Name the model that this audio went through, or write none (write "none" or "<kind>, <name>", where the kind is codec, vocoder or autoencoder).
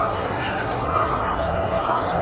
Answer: codec, SNAC